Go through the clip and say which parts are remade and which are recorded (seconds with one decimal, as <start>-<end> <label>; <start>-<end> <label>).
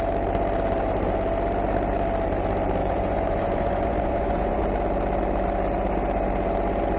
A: 0.0-2.8 recorded; 2.8-4.6 remade; 4.6-7.0 recorded